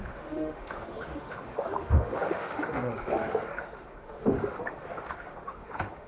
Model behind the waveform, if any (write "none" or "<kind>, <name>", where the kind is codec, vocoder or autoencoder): autoencoder, DAC-VAE